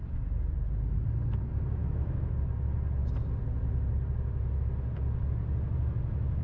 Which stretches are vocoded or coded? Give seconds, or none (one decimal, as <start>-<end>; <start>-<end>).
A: 1.8-2.3